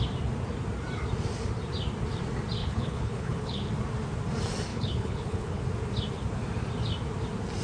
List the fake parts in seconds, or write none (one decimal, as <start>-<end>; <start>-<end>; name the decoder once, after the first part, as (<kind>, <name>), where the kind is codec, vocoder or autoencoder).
2.6-3.7 (codec, HILCodec); 4.7-5.6